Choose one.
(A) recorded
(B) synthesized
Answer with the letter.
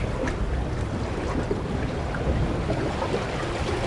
A